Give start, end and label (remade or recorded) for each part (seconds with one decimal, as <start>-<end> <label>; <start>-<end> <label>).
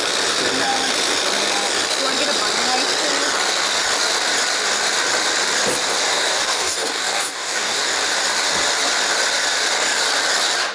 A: 0.0-6.1 recorded; 6.1-7.8 remade; 7.8-10.7 recorded